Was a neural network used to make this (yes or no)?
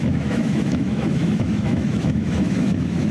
yes